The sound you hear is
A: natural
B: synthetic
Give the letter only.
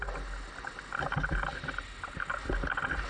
A